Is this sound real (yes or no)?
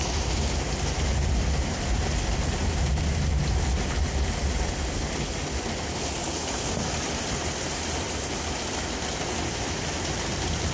yes